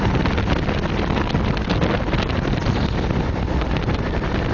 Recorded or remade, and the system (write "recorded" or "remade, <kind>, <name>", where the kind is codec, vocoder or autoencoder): recorded